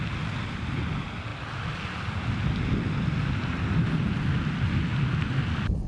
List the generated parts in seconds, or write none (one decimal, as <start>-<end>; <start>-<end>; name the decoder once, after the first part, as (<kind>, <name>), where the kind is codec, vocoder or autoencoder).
none